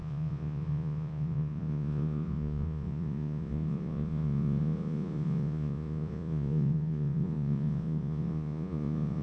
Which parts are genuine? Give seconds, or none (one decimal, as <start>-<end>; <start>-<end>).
none